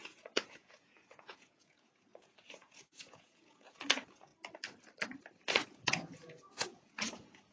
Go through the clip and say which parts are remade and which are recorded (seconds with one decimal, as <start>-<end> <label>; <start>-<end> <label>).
0.0-4.3 remade; 4.3-5.4 recorded; 5.4-7.5 remade